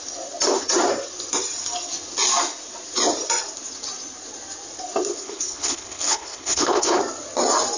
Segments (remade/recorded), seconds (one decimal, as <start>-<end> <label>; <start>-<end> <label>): 0.0-5.1 recorded; 5.1-7.0 remade; 7.0-7.8 recorded